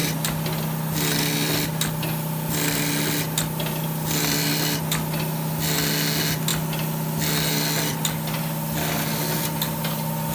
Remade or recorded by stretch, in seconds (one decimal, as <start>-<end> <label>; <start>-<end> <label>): 0.0-10.3 recorded